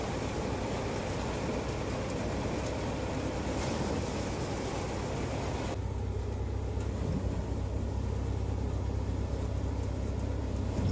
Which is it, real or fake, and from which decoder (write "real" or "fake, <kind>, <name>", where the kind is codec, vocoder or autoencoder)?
real